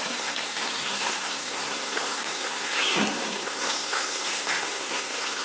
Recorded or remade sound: remade